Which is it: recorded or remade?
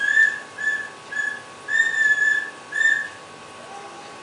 recorded